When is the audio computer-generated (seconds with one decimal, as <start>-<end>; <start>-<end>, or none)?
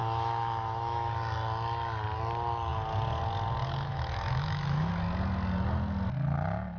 0.0-1.1; 3.6-4.9